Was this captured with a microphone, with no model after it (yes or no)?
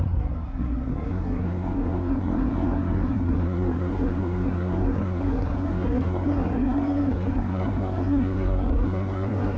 no